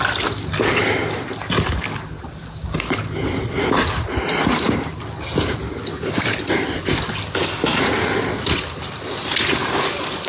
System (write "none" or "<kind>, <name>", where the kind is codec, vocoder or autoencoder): none